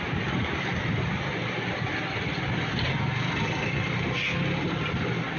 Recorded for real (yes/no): yes